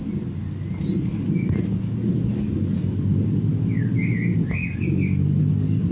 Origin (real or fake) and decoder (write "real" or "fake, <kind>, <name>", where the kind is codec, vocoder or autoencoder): real